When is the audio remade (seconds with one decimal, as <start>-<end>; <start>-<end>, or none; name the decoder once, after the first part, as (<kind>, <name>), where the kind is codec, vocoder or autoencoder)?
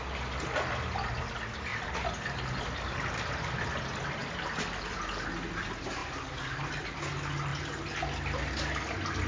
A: none